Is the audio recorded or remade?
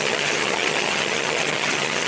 remade